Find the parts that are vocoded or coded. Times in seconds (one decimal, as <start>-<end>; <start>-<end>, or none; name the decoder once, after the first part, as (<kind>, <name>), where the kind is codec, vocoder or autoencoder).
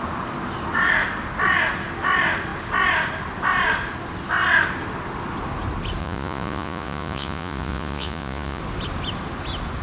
6.0-8.6 (vocoder, Vocos)